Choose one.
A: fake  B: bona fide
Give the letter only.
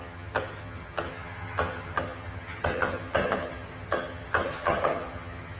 A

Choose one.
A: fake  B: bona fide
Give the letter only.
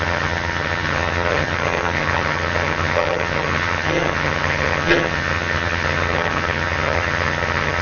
A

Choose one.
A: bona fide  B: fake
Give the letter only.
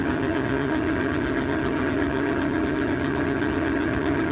B